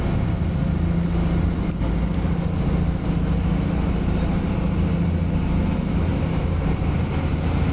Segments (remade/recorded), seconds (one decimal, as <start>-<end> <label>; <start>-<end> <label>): 0.0-7.7 recorded